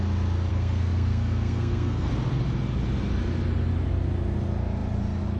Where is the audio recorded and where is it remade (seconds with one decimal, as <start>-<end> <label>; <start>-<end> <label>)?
0.0-0.5 recorded; 0.5-2.1 remade; 2.1-5.4 recorded